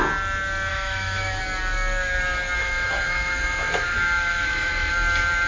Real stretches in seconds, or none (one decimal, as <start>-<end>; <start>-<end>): 0.0-0.7; 1.4-2.6; 4.9-5.5